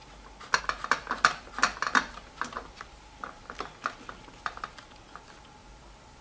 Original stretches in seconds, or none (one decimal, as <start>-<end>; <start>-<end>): 0.0-6.2